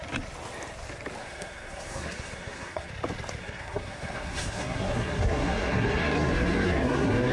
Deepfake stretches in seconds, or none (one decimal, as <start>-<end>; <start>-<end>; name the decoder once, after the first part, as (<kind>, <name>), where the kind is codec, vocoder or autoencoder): 1.2-2.9 (codec, SNAC); 3.4-7.3